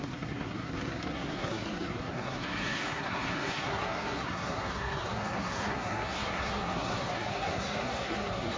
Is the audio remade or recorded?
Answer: remade